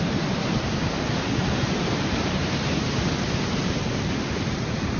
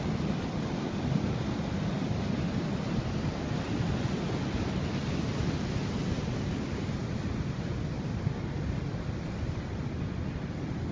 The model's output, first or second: first